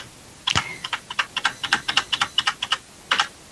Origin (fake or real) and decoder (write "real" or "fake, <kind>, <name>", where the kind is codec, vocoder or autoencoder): real